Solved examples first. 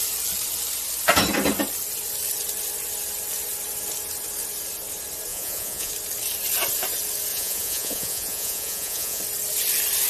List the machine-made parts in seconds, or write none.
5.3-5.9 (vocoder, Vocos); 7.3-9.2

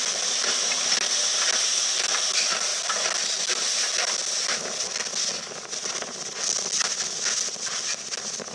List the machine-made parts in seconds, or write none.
none

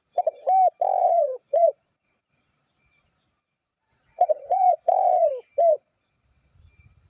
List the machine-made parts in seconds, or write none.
1.0-5.3 (vocoder, Vocos); 5.7-6.6

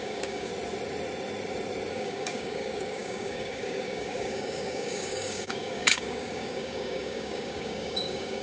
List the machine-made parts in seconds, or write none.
0.0-0.5 (codec, DAC); 1.9-8.4

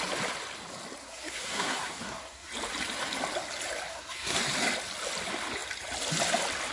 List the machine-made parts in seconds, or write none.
1.0-2.5 (codec, SNAC); 3.9-4.4

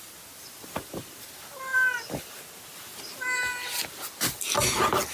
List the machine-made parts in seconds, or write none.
none